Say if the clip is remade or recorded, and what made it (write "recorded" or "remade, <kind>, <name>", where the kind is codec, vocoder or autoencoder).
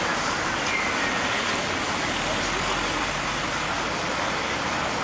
recorded